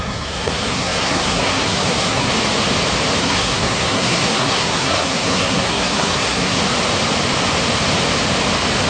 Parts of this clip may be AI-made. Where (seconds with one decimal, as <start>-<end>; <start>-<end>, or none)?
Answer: 0.0-2.3; 3.2-6.6